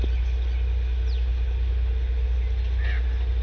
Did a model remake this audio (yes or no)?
no